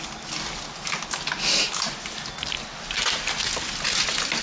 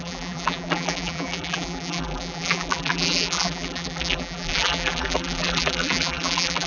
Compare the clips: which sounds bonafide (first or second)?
first